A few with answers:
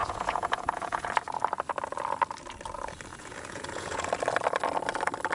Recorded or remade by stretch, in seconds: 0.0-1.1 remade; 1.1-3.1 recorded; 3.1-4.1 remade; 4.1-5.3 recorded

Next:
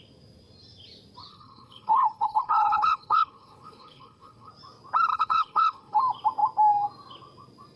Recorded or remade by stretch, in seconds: 0.0-1.3 recorded; 1.3-4.5 remade; 4.5-5.1 recorded; 5.1-6.0 remade; 6.0-7.8 recorded

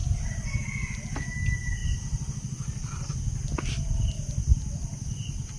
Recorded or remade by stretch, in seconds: 0.0-5.6 recorded

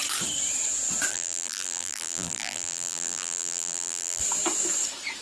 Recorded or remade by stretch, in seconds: 0.0-1.1 recorded; 1.1-4.2 remade; 4.2-5.2 recorded